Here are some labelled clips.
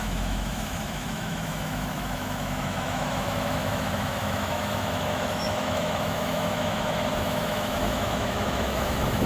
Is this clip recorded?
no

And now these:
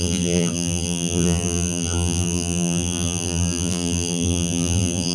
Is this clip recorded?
no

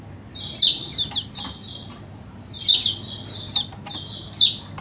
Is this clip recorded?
yes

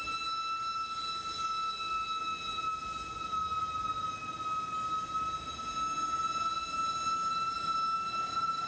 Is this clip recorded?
yes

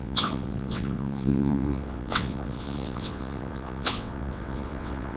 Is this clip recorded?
no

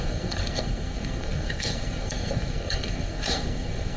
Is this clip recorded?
no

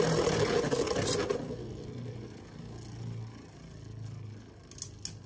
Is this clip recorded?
yes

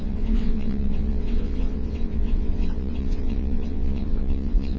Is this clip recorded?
no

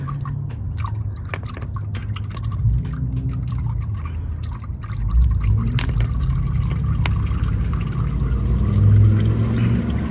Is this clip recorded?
yes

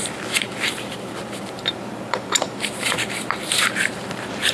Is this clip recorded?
no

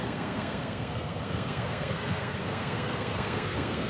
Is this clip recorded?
no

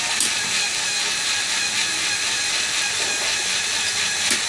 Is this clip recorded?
yes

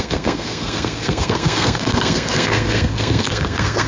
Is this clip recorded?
no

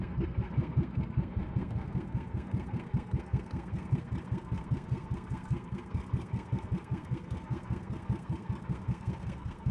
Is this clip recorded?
no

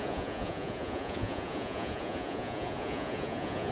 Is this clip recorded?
no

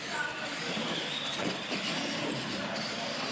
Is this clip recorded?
yes